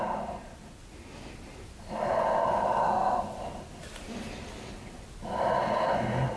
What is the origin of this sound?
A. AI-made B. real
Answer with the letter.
B